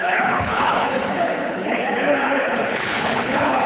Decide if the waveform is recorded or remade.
remade